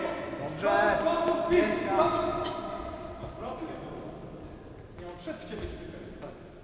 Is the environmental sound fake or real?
real